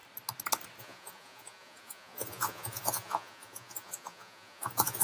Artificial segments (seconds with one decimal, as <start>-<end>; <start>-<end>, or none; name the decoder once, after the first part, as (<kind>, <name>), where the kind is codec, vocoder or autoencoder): 0.8-5.0 (vocoder, Vocos)